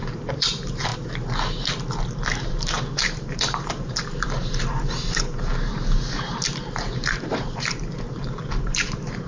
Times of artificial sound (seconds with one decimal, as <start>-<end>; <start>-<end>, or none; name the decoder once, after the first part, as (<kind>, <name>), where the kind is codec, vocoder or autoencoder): 0.0-0.9 (vocoder, BigVGAN v2); 2.5-5.5; 6.6-9.3

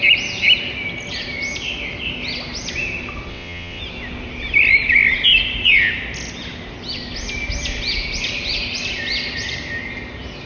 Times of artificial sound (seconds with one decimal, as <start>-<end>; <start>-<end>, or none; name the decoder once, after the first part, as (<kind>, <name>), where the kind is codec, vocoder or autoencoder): 3.3-3.8 (vocoder, WaveNeXt)

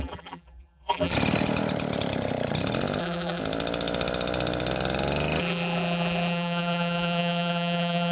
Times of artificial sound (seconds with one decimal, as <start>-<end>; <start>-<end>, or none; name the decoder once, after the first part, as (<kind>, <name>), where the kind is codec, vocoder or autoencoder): 0.0-1.1 (vocoder, BigVGAN v2); 3.0-3.4; 5.4-8.1

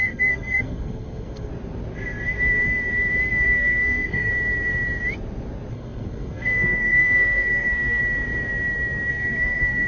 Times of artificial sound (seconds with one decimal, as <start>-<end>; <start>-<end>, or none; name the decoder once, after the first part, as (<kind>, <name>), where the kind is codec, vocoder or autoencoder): 0.0-1.5 (codec, SNAC); 3.3-4.3; 5.7-8.0; 9.1-9.9

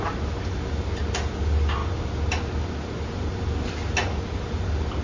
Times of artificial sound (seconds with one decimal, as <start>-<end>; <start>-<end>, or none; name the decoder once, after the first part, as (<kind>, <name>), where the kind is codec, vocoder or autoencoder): none

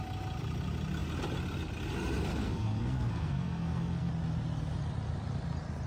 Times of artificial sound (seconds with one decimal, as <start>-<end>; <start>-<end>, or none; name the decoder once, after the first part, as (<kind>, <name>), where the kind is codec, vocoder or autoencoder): 2.3-4.1 (codec, SNAC)